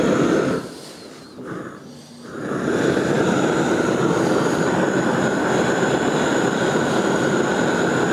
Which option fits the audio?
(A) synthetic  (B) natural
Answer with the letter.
A